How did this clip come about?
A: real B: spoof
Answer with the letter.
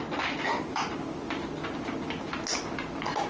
A